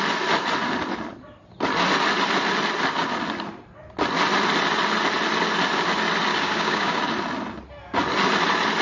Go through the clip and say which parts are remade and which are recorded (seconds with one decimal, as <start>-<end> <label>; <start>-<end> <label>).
0.0-6.3 recorded; 6.3-7.0 remade; 7.0-8.8 recorded